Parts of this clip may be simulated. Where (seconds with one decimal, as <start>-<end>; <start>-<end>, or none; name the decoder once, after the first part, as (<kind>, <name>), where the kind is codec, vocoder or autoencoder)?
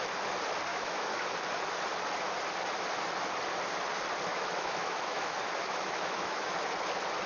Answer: 0.7-1.3 (autoencoder, DAC-VAE); 4.3-6.5